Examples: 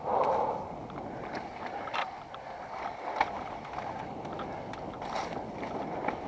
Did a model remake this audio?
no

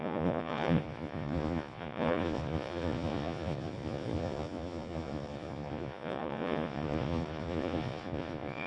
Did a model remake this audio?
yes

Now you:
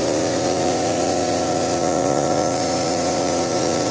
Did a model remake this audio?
yes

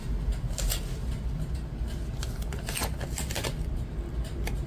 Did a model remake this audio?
no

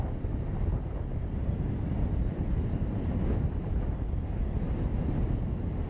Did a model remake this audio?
no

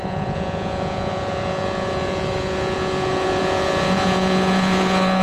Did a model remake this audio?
yes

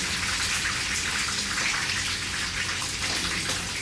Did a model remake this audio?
no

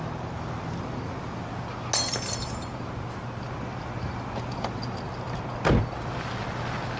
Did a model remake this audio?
no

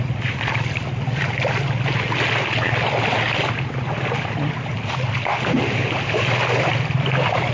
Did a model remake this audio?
no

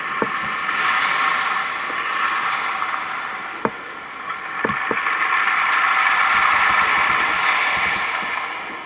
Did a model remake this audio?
no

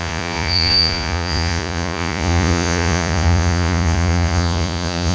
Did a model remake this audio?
yes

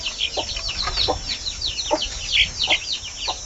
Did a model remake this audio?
no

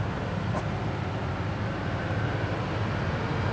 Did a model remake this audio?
no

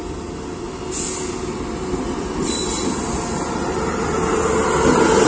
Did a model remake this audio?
no